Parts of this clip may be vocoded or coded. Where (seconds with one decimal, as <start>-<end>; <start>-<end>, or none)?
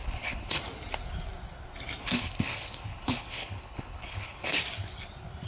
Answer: 0.0-0.6; 2.0-4.6